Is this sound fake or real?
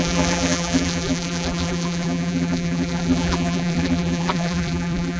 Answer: fake